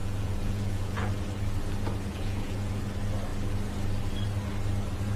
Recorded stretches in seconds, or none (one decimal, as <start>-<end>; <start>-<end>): 1.1-2.1; 2.8-5.2